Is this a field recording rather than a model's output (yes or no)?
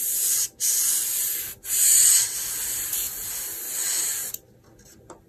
yes